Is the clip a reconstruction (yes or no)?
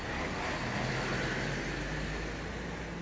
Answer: no